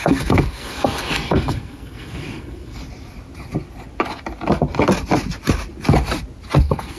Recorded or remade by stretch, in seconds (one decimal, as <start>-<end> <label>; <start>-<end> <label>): 0.0-2.8 remade; 2.8-6.6 recorded; 6.6-7.0 remade